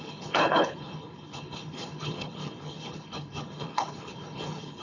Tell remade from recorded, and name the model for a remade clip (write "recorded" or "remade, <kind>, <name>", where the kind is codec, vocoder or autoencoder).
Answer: remade, codec, HILCodec